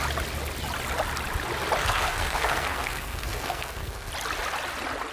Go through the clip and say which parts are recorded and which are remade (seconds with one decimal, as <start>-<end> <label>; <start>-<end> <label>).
0.0-1.8 recorded; 1.8-4.1 remade; 4.1-5.1 recorded